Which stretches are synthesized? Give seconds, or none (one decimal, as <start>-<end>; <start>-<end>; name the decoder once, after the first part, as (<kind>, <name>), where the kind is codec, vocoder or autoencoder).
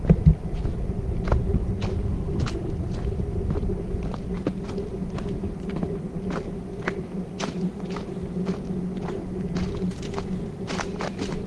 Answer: 1.6-3.6 (vocoder, BigVGAN v2); 6.7-7.7